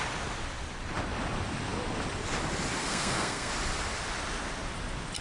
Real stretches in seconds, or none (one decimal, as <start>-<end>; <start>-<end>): 0.0-2.8; 3.5-5.2